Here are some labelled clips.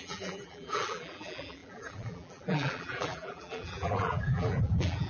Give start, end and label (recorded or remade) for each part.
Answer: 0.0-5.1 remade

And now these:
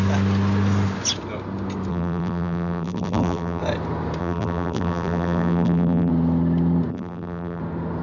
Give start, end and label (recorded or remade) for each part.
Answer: 0.0-1.9 recorded; 1.9-3.6 remade; 3.6-4.2 recorded; 4.2-6.1 remade; 6.1-6.9 recorded; 6.9-7.6 remade; 7.6-8.0 recorded

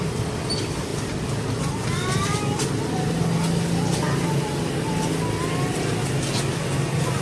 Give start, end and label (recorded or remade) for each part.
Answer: 0.0-7.2 recorded

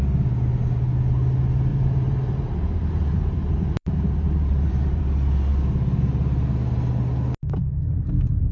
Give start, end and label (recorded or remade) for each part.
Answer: 0.0-1.7 recorded; 1.7-5.0 remade; 5.0-8.5 recorded

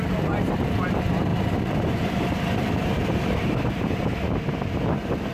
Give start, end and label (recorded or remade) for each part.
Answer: 0.0-1.3 recorded; 1.3-4.0 remade; 4.0-5.3 recorded

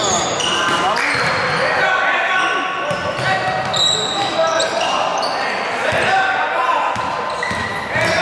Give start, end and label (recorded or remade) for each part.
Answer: 0.0-8.2 recorded

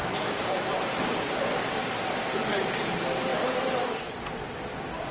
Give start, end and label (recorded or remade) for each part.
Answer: 0.0-1.8 remade; 1.8-5.1 recorded

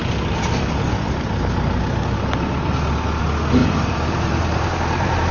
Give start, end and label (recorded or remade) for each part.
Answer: 0.0-3.6 recorded; 3.6-5.3 remade